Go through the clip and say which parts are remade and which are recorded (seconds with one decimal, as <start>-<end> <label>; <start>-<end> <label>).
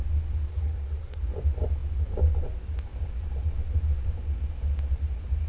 0.0-0.5 recorded; 0.5-1.2 remade; 1.2-5.5 recorded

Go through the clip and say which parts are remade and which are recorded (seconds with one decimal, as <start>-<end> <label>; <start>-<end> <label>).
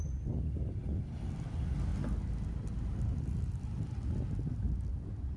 0.0-5.4 recorded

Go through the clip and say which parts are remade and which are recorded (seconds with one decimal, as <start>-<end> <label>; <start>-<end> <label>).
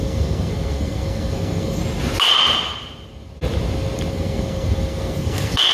0.0-1.8 remade; 1.8-4.1 recorded; 4.1-5.7 remade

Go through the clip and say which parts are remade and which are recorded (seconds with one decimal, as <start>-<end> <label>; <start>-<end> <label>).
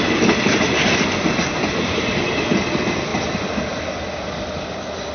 0.0-5.1 recorded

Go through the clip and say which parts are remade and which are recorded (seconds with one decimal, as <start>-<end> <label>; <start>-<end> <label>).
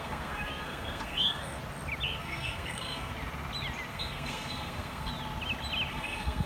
0.0-1.6 remade; 1.6-2.2 recorded; 2.2-3.1 remade; 3.1-3.9 recorded; 3.9-5.1 remade; 5.1-5.9 recorded; 5.9-6.5 remade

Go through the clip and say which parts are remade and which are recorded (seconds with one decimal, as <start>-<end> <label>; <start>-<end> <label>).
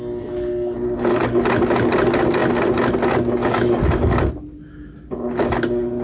0.0-6.0 recorded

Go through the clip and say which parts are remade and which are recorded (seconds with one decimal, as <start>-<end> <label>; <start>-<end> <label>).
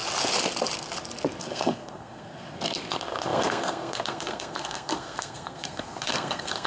0.0-1.4 recorded; 1.4-6.7 remade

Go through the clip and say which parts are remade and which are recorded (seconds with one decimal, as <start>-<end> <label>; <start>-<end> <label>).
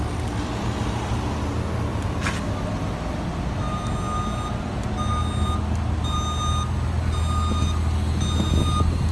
0.0-9.1 recorded